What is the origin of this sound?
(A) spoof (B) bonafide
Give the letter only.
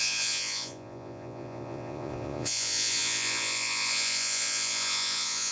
A